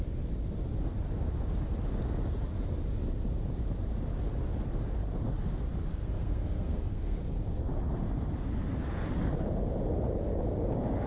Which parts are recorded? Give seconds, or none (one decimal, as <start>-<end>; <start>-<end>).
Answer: 0.0-5.9; 7.2-11.1